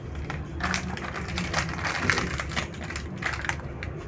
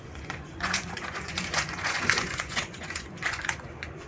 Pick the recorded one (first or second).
first